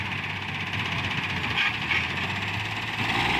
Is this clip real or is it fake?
real